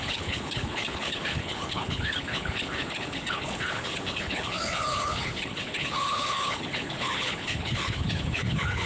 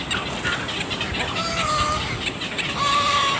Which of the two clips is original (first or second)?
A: second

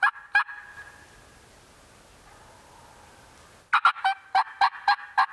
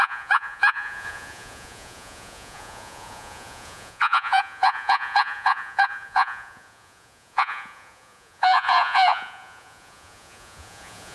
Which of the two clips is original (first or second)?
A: first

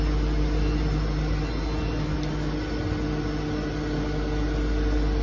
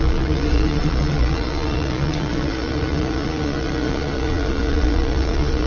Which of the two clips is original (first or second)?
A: first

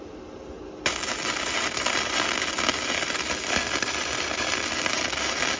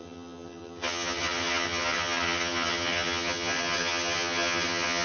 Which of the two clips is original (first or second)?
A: first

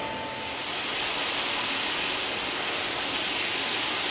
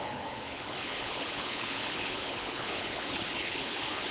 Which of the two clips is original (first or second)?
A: first